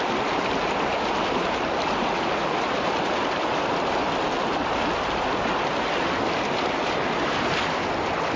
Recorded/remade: recorded